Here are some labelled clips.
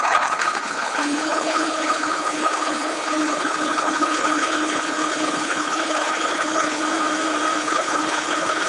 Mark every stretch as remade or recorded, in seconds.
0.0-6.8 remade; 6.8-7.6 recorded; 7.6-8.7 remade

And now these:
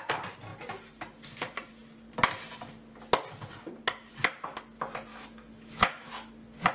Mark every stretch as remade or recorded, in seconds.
0.0-5.1 recorded; 5.1-6.1 remade; 6.1-6.7 recorded

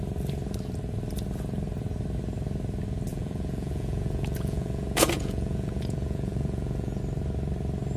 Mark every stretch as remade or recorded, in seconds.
0.0-3.1 recorded; 3.1-7.0 remade; 7.0-8.0 recorded

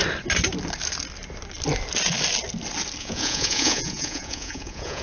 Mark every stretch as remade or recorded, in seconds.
0.0-3.0 recorded; 3.0-5.0 remade

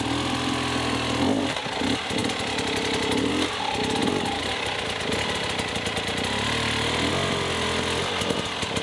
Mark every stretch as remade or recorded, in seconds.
0.0-8.8 recorded